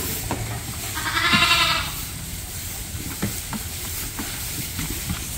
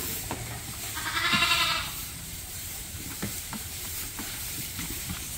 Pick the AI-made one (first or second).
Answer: second